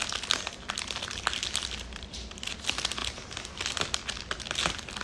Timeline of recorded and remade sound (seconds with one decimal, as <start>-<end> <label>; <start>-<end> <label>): 0.0-5.0 recorded